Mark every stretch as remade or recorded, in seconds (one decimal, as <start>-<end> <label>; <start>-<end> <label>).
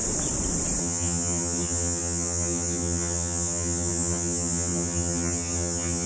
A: 0.0-0.8 recorded; 0.8-6.1 remade